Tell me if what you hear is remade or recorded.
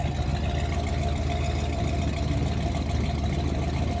recorded